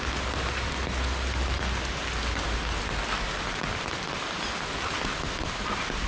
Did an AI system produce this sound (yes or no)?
no